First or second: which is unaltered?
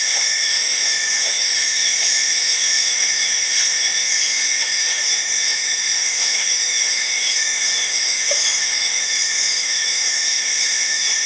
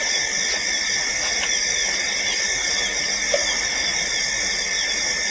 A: second